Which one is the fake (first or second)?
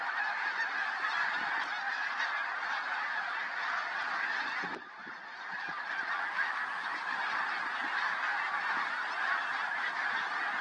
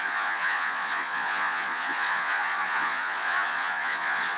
second